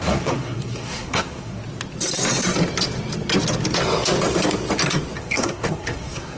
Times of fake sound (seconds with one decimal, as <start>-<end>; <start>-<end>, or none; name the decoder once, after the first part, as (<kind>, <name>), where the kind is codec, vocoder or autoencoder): 0.0-1.6 (codec, SNAC); 5.2-6.4